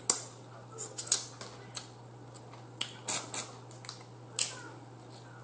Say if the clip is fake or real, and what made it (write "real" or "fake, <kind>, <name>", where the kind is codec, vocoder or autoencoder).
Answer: real